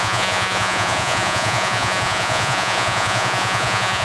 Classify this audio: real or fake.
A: fake